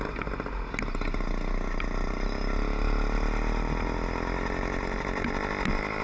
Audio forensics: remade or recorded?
recorded